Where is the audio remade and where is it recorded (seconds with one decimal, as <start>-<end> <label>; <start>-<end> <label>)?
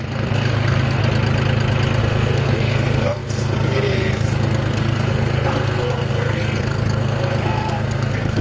0.0-1.0 remade; 1.0-2.0 recorded; 2.0-8.4 remade